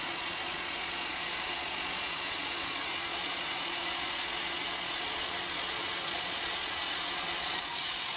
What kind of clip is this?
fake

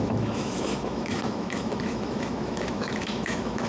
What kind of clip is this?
fake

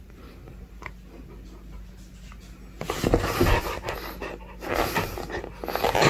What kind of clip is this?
real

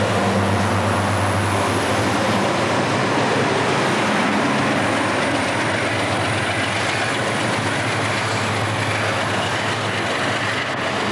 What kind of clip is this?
real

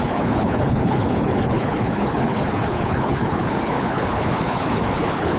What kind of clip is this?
fake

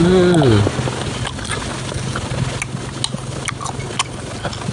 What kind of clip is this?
real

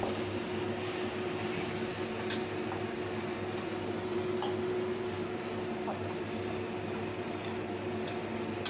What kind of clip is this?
real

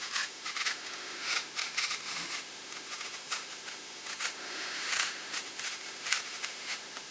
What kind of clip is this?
fake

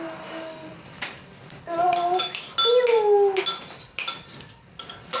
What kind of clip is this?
real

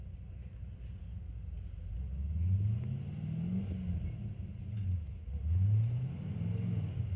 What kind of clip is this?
real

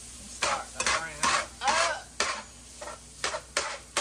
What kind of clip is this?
real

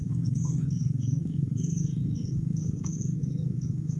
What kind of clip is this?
fake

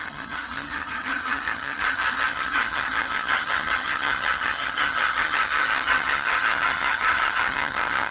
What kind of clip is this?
fake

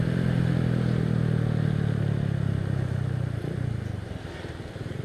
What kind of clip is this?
real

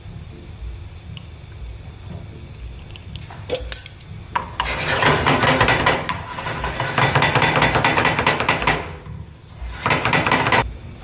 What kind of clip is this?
real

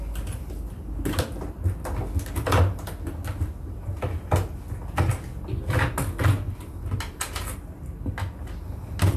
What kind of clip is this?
real